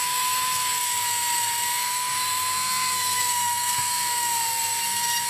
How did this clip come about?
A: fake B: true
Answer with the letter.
A